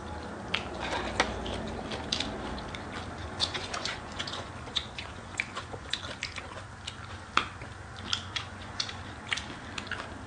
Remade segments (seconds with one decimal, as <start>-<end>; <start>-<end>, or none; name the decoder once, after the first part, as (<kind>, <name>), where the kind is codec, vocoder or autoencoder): 3.2-6.0 (vocoder, Vocos); 8.2-9.0